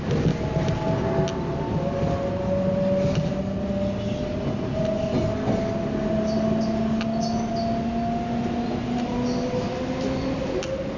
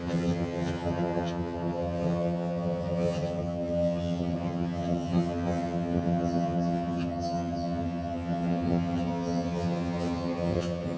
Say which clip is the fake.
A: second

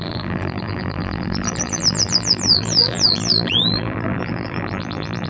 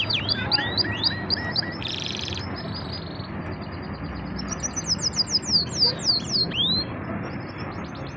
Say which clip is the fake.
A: first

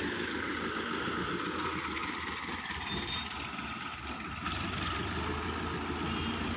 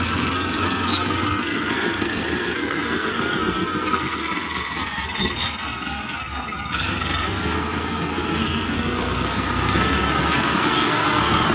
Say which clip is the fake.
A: second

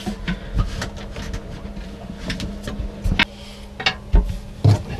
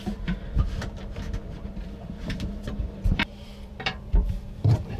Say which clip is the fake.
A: second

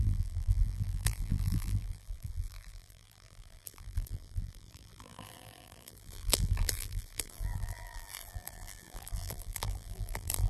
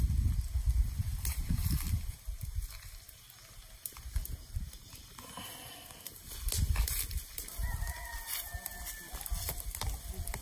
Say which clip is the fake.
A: first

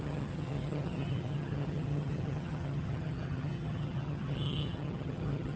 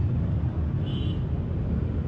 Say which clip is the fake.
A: first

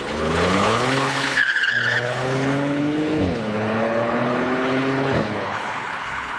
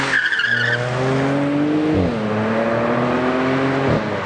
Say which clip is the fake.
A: first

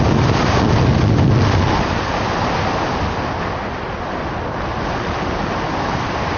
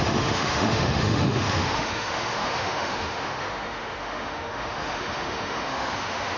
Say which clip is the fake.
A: second